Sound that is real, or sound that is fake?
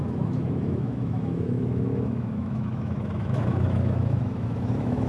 fake